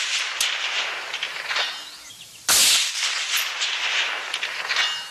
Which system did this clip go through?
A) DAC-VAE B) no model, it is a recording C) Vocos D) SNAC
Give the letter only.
B